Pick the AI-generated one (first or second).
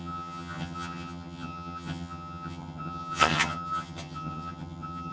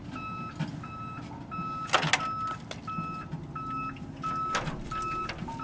first